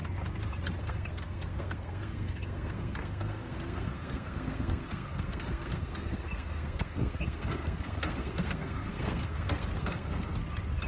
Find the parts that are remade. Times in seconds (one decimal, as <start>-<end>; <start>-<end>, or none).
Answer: 0.8-10.4